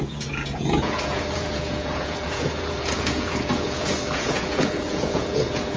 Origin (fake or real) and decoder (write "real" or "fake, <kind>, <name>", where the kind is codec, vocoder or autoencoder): fake, vocoder, Vocos